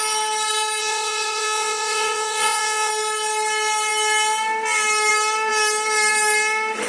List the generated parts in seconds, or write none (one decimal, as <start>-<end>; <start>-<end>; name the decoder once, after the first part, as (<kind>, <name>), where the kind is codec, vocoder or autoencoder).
0.8-2.9 (vocoder, Vocos)